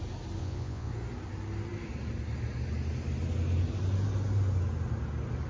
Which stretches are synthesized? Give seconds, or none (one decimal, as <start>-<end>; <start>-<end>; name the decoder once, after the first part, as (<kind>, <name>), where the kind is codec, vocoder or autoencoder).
0.4-0.9 (vocoder, Vocos)